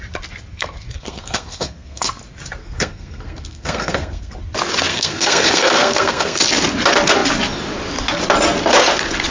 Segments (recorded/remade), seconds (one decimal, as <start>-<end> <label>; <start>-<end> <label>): 0.0-0.5 recorded; 0.5-2.1 remade; 2.1-2.6 recorded; 2.6-4.3 remade; 4.3-4.9 recorded; 4.9-6.4 remade; 6.4-9.3 recorded